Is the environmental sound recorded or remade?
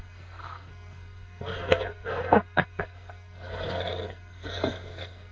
remade